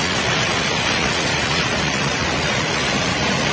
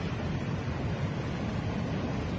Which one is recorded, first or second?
second